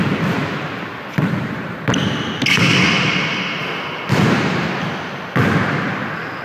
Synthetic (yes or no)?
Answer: no